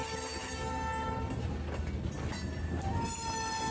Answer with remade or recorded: recorded